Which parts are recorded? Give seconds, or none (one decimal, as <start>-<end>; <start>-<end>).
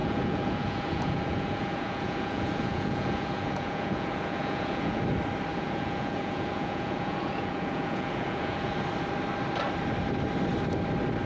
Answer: 5.0-5.5; 8.7-11.3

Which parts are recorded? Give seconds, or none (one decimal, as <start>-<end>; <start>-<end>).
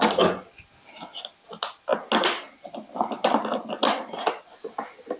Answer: 0.0-5.2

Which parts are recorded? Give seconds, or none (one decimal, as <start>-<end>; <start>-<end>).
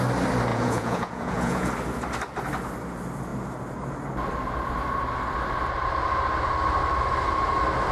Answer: 0.0-0.5; 1.7-7.9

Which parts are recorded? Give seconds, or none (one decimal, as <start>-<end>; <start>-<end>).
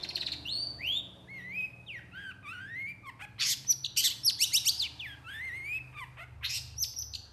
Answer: 1.0-7.3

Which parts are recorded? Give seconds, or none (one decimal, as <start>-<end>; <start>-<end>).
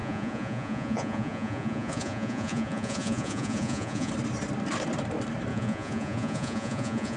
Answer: 4.1-5.5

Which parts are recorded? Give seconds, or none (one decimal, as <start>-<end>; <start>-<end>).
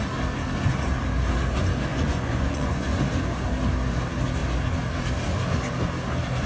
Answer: 0.0-1.9; 3.0-6.5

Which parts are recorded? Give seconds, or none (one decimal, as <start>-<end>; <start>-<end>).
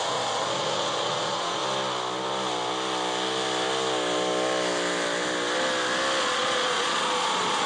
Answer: 1.6-6.2